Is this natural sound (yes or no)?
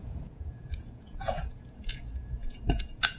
no